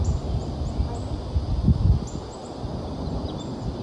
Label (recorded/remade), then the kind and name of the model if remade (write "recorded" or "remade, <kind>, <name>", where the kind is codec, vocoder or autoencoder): recorded